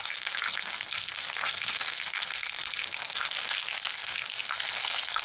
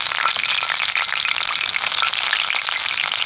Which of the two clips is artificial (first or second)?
first